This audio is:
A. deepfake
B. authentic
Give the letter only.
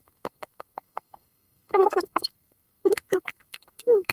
A